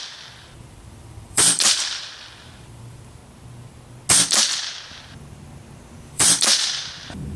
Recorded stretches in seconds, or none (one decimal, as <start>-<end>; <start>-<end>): 3.2-6.0